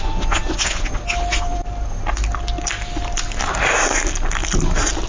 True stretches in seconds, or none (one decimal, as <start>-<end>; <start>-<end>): 0.0-5.1